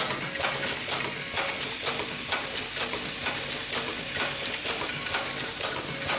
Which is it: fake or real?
real